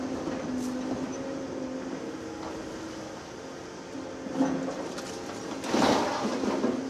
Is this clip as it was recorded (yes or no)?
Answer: yes